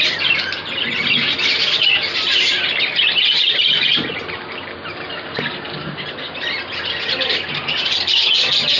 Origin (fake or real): real